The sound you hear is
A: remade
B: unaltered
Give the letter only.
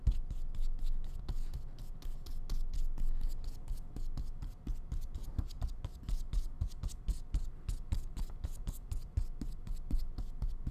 B